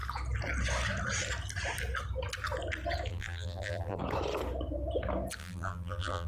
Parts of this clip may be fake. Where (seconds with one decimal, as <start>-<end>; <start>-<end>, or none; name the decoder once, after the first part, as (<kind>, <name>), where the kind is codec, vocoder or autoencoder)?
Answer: 3.1-4.0 (vocoder, BigVGAN v2); 5.4-6.3